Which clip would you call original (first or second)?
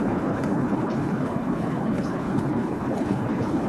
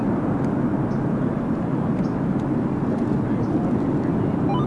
second